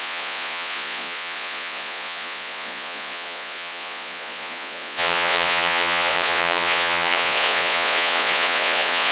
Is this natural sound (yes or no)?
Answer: no